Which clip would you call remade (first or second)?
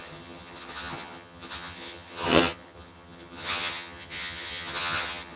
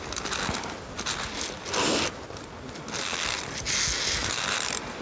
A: first